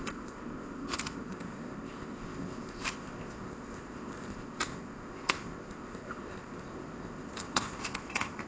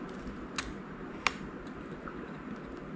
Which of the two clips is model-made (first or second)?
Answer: first